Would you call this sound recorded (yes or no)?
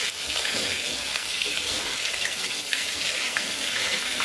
no